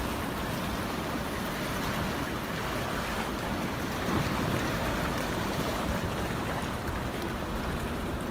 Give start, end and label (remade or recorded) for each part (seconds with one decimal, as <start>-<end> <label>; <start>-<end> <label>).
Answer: 0.0-3.5 recorded; 3.5-5.6 remade; 5.6-8.3 recorded